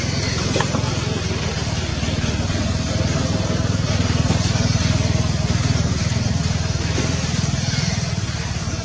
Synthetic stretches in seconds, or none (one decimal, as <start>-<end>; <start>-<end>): 0.0-1.9; 5.9-8.8